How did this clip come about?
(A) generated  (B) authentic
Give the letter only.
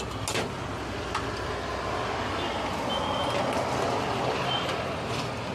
B